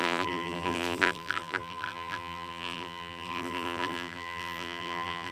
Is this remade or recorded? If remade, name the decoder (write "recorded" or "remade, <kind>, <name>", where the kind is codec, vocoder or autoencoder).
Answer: remade, vocoder, BigVGAN v2